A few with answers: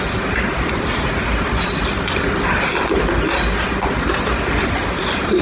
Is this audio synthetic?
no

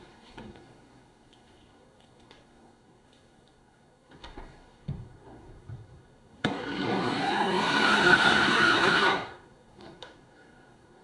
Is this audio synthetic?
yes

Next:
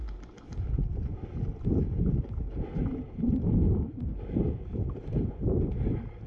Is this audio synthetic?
no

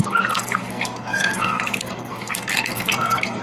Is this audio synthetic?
yes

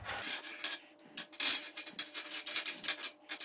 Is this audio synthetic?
no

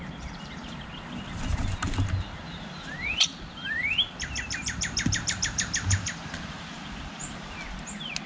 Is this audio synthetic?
no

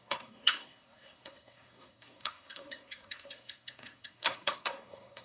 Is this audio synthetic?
yes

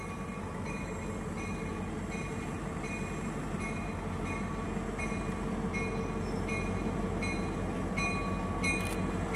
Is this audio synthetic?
no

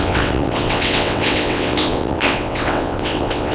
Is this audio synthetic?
yes